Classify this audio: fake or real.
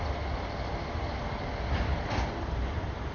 real